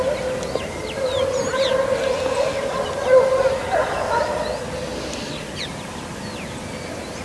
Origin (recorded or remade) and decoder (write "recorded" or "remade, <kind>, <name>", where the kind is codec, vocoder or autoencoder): recorded